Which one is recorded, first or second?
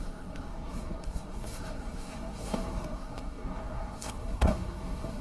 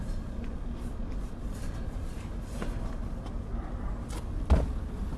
second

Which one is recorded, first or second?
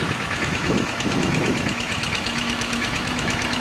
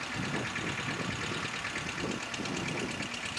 second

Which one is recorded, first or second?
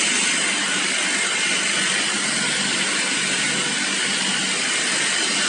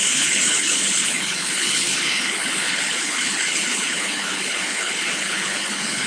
first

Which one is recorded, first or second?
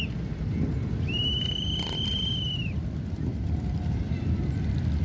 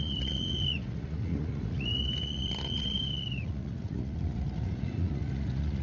first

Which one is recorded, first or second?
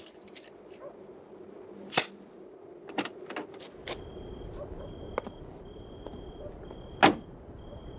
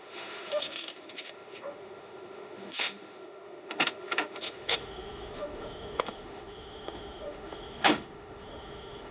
first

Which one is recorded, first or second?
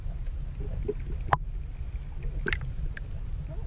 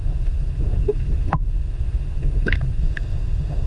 first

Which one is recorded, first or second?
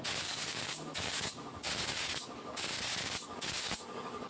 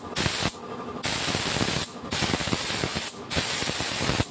second